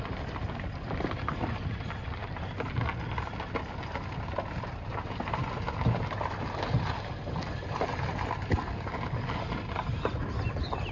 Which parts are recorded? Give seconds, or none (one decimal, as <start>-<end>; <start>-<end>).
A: 0.0-10.9